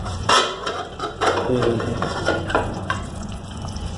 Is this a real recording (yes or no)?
no